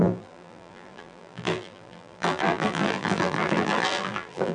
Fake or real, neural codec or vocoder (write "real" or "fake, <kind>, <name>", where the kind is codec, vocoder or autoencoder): fake, vocoder, BigVGAN v2